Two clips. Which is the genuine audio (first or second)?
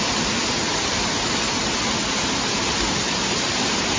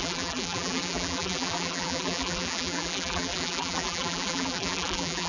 first